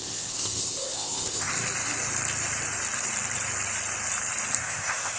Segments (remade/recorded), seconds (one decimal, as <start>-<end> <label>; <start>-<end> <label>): 0.0-1.5 remade; 1.5-4.6 recorded; 4.6-5.2 remade